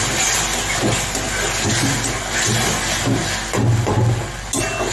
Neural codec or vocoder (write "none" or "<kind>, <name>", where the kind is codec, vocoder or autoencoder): none